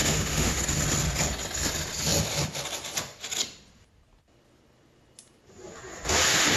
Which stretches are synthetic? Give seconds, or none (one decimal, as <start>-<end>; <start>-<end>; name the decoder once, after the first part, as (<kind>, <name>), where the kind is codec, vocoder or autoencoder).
0.0-0.6 (autoencoder, DAC-VAE)